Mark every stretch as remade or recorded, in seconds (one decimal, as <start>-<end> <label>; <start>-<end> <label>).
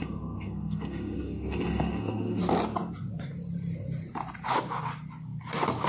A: 0.0-2.4 remade; 2.4-5.9 recorded